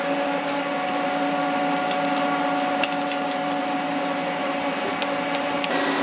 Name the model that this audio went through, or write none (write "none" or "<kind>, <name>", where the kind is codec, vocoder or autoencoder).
none